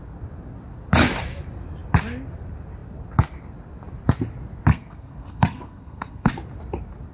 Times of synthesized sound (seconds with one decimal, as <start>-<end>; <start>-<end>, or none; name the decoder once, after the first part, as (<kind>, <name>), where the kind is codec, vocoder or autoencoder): 4.7-6.3 (codec, SNAC)